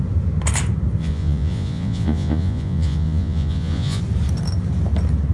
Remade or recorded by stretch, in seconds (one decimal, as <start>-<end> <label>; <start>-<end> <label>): 0.0-1.0 recorded; 1.0-4.0 remade; 4.0-5.3 recorded